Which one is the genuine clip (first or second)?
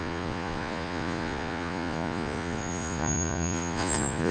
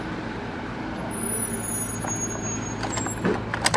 second